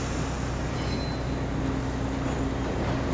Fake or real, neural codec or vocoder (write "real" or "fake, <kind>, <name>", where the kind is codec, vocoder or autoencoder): real